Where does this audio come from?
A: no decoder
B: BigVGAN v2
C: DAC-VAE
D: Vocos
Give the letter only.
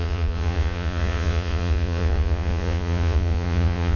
D